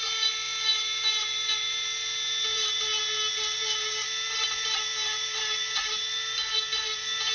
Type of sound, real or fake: fake